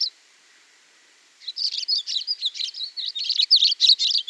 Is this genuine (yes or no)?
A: no